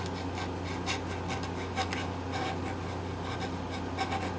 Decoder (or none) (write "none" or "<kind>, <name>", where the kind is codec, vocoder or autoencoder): none